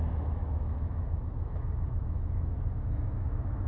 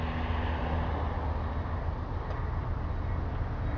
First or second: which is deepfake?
first